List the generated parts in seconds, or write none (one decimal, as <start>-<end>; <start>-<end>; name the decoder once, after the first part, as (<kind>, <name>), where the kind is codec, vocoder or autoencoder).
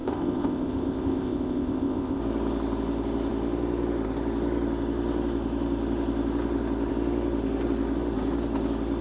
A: 0.0-2.2 (codec, ZipCodec)